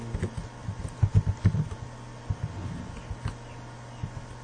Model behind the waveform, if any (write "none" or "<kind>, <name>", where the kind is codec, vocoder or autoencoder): none